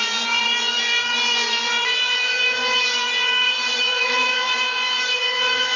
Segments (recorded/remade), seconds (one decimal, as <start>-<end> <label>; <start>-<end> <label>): 0.0-5.8 remade